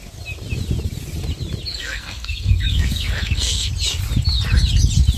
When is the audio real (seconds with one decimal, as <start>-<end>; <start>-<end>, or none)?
0.0-1.7; 3.7-5.2